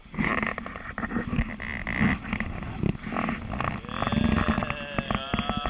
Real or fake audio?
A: real